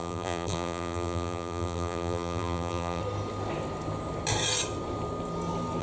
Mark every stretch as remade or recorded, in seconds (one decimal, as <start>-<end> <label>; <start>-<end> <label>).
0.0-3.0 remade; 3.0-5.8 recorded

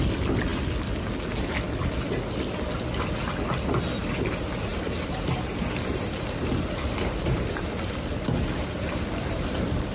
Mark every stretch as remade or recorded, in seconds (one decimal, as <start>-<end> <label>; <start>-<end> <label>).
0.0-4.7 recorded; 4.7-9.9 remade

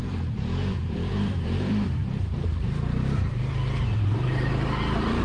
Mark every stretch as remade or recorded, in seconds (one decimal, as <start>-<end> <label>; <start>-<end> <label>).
0.0-5.2 remade

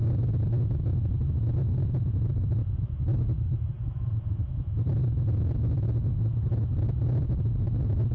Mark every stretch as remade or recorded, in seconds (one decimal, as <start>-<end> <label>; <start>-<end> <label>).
0.0-1.6 recorded; 1.6-5.2 remade; 5.2-8.1 recorded

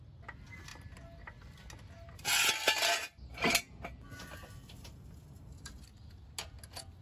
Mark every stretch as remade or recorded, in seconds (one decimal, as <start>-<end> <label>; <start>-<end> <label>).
0.0-7.0 recorded

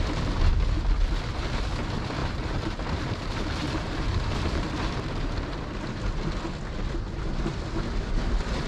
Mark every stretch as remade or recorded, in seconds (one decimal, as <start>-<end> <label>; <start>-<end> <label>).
0.0-2.2 recorded; 2.2-5.4 remade; 5.4-8.7 recorded

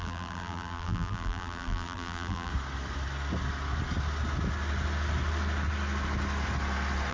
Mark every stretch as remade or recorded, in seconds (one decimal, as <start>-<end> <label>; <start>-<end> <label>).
0.0-2.5 remade; 2.5-7.1 recorded